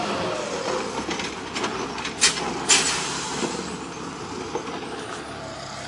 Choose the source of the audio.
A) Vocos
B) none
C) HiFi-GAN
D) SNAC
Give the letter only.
B